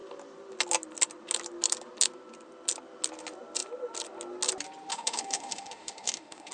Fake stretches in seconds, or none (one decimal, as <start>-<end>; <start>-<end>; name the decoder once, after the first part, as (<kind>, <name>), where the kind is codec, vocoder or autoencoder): 4.9-6.5 (autoencoder, DAC-VAE)